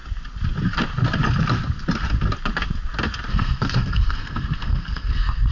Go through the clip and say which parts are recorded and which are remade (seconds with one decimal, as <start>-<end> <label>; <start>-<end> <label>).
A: 0.0-3.3 recorded; 3.3-5.5 remade